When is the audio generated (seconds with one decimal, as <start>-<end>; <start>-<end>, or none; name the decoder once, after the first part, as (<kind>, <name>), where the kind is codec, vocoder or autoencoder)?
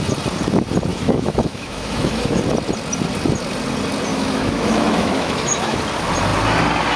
0.9-2.4 (autoencoder, DAC-VAE); 4.1-5.8